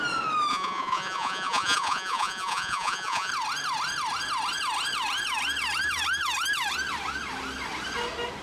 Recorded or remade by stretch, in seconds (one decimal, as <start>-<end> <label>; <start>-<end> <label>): 0.0-0.5 recorded; 0.5-3.3 remade; 3.3-8.4 recorded